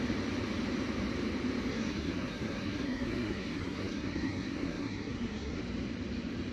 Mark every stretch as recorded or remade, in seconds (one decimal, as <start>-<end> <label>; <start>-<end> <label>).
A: 0.0-1.7 recorded; 1.7-5.6 remade; 5.6-6.5 recorded